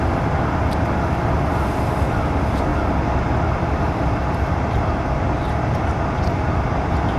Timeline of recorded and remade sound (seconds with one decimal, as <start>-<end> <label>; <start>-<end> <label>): 0.0-7.2 recorded